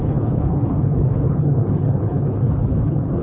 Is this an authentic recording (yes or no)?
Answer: no